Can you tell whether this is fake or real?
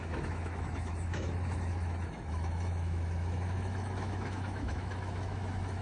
fake